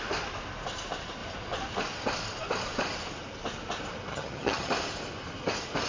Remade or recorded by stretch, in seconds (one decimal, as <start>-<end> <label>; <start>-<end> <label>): 0.0-4.1 recorded; 4.1-4.7 remade; 4.7-5.9 recorded